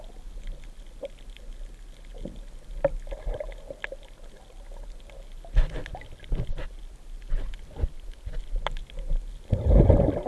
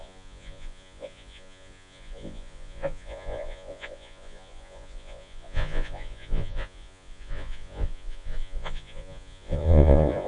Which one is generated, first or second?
second